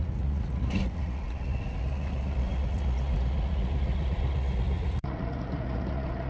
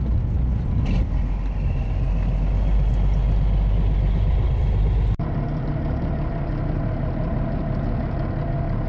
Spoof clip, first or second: first